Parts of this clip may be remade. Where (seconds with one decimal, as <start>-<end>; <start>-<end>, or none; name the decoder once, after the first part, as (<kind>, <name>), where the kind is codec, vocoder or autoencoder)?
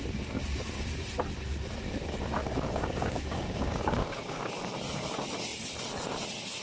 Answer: 2.4-4.5 (codec, DAC)